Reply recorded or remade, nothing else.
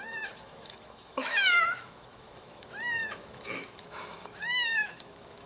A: remade